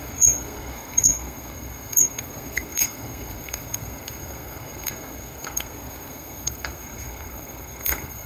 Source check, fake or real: fake